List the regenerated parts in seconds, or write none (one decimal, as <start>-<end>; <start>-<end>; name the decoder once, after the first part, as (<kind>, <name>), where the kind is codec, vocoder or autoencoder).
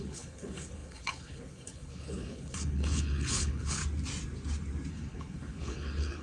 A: 0.0-3.8 (codec, HILCodec); 4.9-6.2